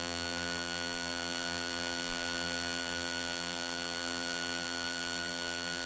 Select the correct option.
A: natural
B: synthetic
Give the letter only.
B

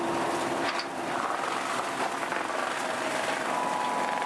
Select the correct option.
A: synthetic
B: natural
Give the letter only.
B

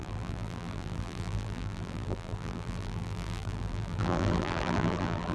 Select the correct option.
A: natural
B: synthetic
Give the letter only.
B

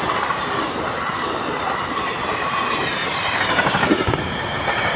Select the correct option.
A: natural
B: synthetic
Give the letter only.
B